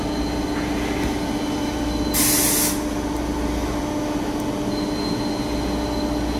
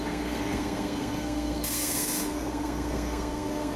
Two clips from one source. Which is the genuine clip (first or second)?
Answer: first